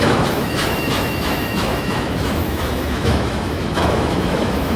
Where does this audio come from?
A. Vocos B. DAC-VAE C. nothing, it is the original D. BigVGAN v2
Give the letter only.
B